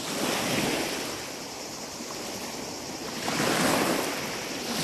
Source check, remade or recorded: recorded